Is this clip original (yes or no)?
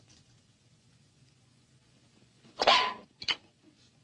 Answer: no